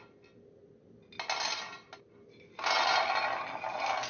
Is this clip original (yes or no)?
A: yes